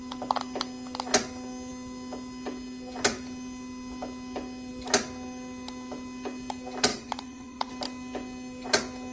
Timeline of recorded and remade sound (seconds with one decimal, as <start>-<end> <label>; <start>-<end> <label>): 0.0-6.9 recorded; 6.9-7.7 remade; 7.7-9.1 recorded